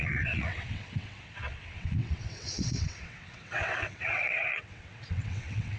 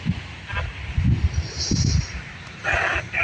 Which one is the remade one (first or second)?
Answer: first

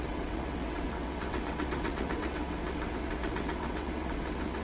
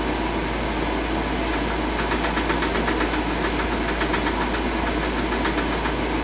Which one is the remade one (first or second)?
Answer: first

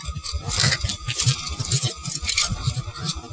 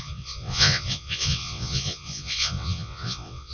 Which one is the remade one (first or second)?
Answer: second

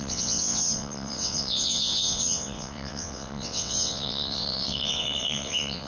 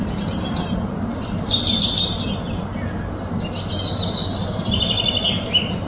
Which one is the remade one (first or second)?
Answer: first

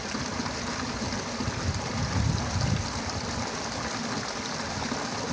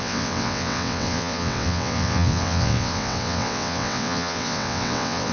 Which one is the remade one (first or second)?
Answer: second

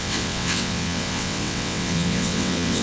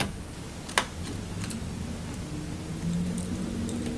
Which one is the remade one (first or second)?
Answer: first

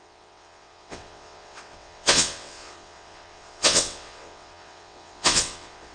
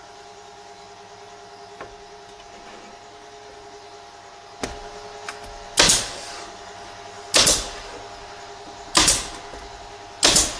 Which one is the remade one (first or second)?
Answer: first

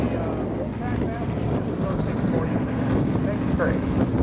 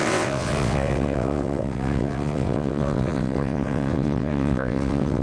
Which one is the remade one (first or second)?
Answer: second